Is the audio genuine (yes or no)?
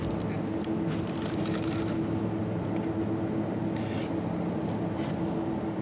yes